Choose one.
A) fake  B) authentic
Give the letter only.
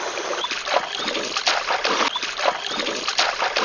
B